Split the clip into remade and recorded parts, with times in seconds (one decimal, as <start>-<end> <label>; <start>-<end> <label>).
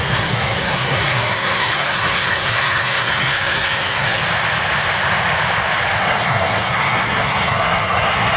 0.0-4.2 remade; 4.2-6.0 recorded; 6.0-8.4 remade